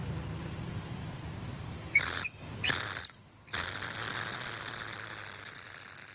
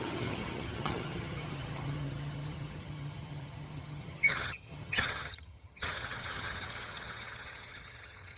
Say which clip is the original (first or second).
first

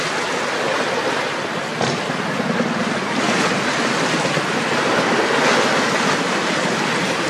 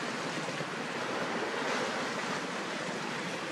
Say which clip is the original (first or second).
first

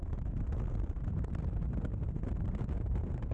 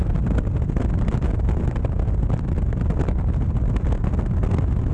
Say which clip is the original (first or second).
second